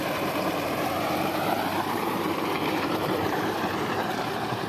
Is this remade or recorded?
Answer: remade